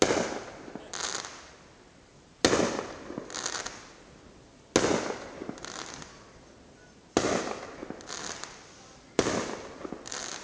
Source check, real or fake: real